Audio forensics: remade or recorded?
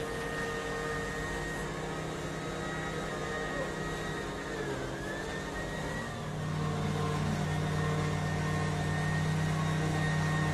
recorded